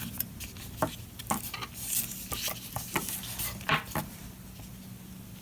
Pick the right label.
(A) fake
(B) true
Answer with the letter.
B